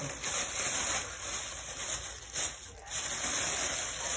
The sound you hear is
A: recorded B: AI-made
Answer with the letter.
A